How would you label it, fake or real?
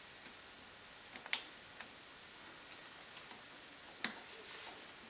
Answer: real